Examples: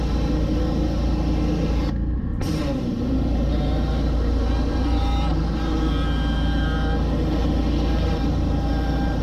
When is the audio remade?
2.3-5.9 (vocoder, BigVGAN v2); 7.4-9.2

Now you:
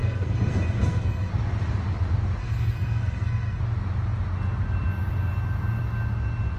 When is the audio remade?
0.0-1.3 (codec, SNAC); 2.4-3.6

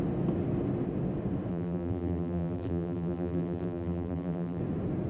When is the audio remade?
1.5-4.6 (vocoder, BigVGAN v2)